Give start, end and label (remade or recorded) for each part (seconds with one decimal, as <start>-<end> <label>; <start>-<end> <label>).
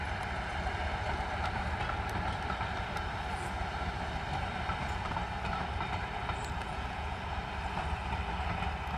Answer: 0.0-6.6 recorded; 6.6-7.2 remade; 7.2-9.0 recorded